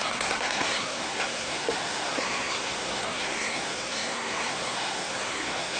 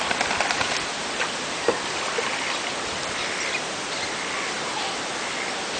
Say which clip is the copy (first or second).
first